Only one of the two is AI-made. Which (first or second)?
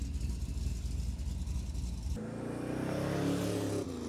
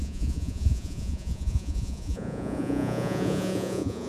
second